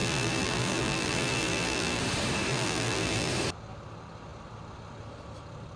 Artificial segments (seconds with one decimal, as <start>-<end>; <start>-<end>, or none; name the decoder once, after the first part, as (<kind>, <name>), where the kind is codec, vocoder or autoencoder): 0.0-2.0 (vocoder, BigVGAN v2); 2.5-3.3